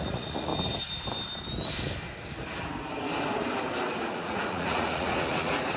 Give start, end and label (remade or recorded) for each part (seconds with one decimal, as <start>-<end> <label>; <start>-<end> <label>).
0.0-0.5 remade; 0.5-4.0 recorded; 4.0-5.8 remade